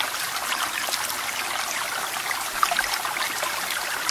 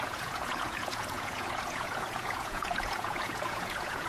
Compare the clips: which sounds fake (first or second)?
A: second